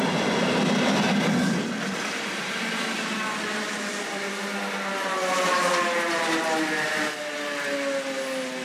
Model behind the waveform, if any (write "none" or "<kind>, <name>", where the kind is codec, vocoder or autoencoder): none